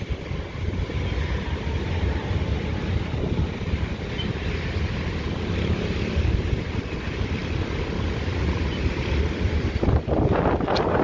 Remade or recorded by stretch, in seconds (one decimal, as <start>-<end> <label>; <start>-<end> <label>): 0.0-11.0 recorded